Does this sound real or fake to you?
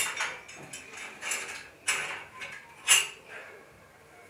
real